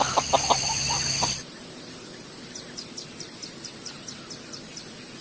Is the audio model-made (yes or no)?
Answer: no